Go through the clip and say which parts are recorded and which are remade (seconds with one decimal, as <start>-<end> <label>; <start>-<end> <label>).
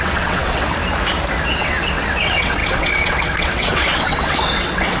0.0-0.8 remade; 0.8-1.4 recorded; 1.4-5.0 remade